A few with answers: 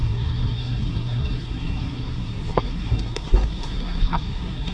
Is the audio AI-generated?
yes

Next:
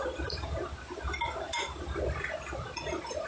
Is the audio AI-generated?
no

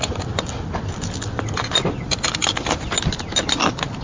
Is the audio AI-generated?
no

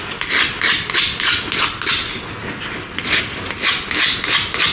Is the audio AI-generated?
no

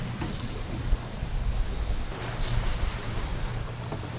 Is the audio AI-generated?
no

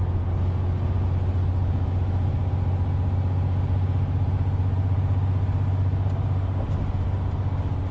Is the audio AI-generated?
no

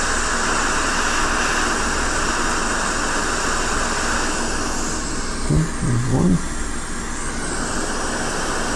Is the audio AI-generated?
no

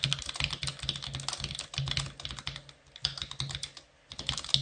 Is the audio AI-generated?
no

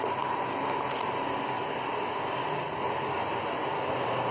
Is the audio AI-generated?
no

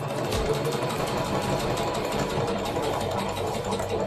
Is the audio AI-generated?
yes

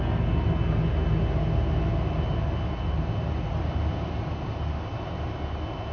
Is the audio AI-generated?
no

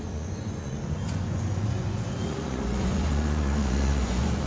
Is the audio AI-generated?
yes